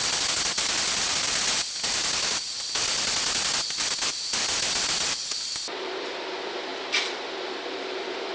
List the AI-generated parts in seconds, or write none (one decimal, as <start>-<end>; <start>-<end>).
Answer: none